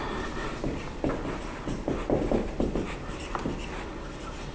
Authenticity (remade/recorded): recorded